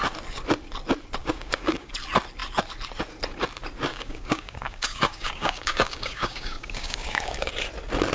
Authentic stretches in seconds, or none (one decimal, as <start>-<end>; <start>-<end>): 0.0-1.2; 1.9-3.9; 7.5-8.1